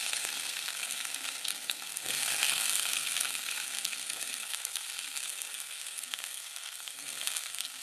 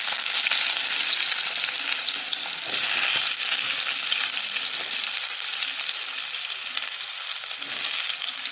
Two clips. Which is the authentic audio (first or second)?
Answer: second